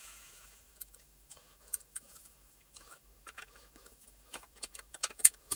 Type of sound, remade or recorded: remade